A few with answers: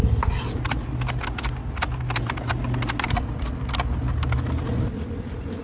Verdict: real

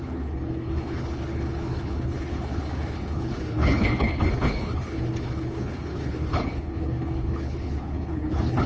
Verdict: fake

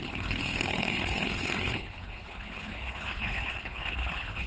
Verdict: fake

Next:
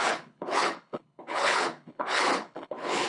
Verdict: fake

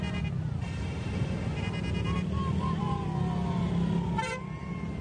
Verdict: real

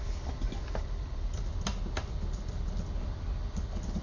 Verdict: real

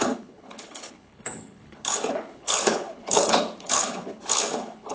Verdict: fake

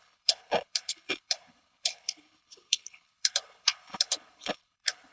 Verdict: fake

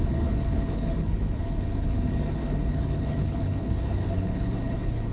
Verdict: fake